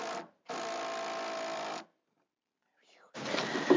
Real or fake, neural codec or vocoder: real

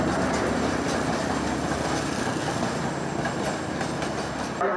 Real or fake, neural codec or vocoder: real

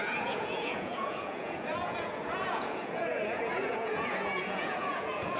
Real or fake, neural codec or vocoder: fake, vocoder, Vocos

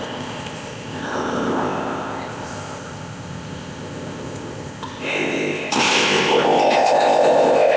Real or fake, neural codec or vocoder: fake, codec, ZipCodec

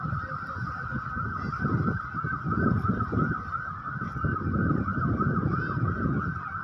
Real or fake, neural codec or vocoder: real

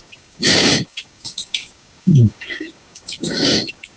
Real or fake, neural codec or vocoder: fake, codec, DAC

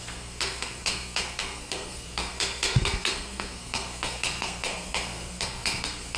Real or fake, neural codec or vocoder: fake, codec, SNAC